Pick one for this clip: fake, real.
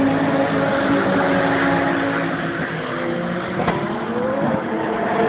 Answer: real